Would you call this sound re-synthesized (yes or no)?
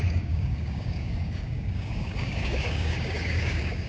yes